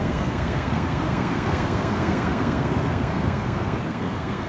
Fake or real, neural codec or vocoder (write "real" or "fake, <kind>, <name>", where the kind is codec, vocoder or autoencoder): fake, codec, SNAC